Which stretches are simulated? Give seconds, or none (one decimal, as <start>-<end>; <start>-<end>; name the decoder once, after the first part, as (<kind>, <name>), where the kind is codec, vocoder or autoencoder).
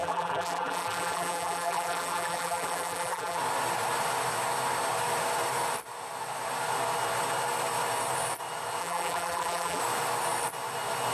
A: 0.0-3.4 (vocoder, BigVGAN v2); 8.8-9.8